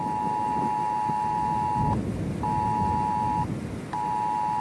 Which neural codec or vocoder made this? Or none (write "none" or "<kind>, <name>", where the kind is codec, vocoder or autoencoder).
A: none